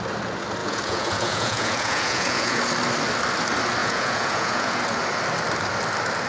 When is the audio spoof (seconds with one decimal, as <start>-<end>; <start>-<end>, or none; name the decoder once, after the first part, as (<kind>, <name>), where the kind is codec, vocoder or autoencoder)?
0.6-2.6 (vocoder, Vocos); 3.8-4.8